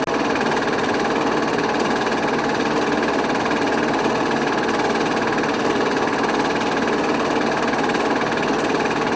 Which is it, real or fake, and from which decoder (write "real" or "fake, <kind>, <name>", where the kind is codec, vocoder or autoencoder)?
real